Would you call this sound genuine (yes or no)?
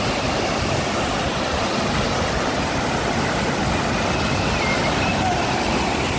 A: yes